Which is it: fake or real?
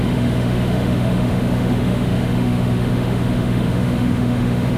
fake